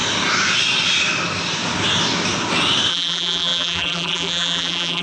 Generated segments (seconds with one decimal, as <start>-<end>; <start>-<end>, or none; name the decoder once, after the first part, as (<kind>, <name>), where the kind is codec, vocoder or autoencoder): 2.9-5.0 (vocoder, BigVGAN v2)